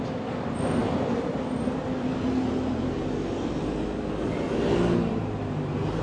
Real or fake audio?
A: real